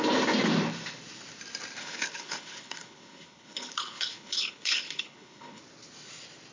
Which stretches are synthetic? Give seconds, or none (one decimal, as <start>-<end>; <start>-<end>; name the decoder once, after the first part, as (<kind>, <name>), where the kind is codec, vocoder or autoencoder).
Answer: 1.8-5.6 (codec, HILCodec)

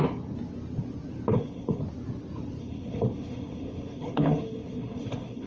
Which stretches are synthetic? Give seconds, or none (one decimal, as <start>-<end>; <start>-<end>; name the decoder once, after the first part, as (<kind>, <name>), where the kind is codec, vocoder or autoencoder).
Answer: 1.3-1.8 (codec, HILCodec); 2.6-5.5

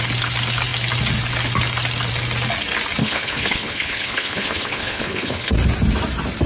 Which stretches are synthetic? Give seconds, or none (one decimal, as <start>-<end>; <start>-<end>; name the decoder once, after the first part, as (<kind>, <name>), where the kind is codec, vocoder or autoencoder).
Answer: 3.0-5.5 (codec, HILCodec)

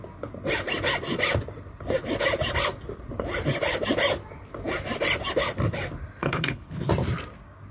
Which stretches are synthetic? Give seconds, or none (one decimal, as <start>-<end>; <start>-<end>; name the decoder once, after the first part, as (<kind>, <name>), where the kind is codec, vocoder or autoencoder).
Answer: 6.2-6.9 (codec, HILCodec)

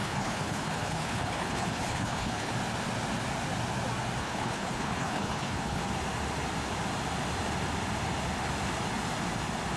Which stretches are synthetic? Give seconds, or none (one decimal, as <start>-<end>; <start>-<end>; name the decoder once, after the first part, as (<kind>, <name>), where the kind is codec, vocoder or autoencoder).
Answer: 0.0-2.5 (codec, HILCodec); 4.2-5.8